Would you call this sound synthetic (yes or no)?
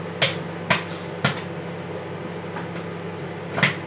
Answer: no